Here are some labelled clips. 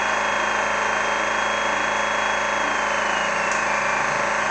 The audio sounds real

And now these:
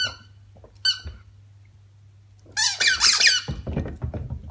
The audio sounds real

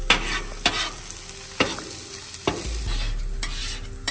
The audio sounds real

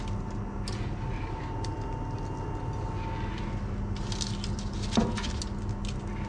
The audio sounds real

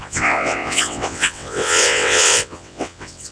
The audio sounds fake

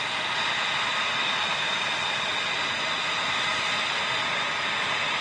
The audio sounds real